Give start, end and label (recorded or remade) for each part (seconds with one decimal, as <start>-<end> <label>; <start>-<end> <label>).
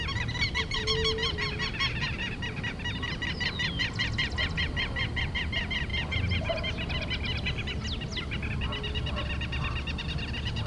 0.0-10.7 recorded